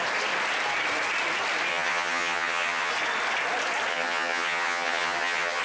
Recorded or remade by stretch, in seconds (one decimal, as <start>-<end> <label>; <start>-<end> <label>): 0.0-1.7 recorded; 1.7-2.9 remade; 2.9-3.9 recorded; 3.9-5.6 remade